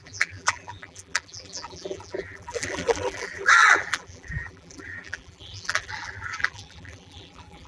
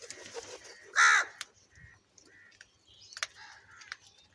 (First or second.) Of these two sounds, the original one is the second